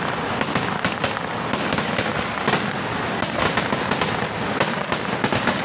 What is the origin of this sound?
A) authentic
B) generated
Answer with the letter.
A